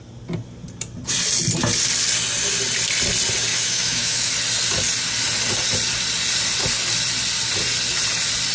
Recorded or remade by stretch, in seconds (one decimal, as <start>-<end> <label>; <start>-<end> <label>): 0.0-3.5 recorded; 3.5-4.3 remade; 4.3-8.5 recorded